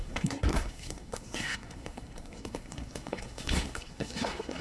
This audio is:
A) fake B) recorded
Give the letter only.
A